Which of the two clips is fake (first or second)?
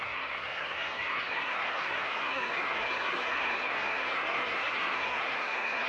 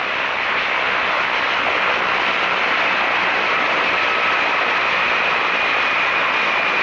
first